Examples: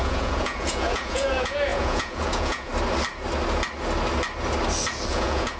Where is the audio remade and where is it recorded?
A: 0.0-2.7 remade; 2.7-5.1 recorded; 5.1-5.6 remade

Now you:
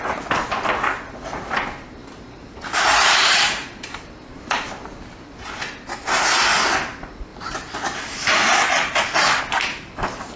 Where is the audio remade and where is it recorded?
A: 0.0-2.0 recorded; 2.0-4.7 remade; 4.7-7.3 recorded; 7.3-9.4 remade; 9.4-10.4 recorded

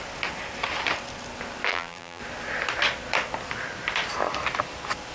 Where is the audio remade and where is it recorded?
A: 0.0-1.7 recorded; 1.7-2.2 remade; 2.2-5.1 recorded

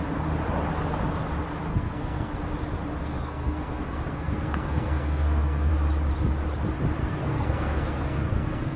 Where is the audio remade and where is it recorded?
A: 0.0-1.7 recorded; 1.7-2.3 remade; 2.3-3.0 recorded; 3.0-5.7 remade; 5.7-7.0 recorded; 7.0-8.8 remade

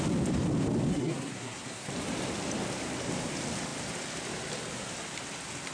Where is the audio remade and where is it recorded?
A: 0.0-0.9 recorded; 0.9-1.9 remade; 1.9-5.7 recorded

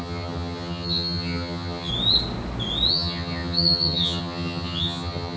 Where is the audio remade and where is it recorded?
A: 0.0-1.9 remade; 1.9-2.9 recorded; 2.9-5.4 remade